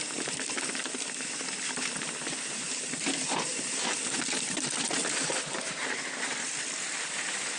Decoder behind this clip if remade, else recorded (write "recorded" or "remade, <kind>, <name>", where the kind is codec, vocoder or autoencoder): recorded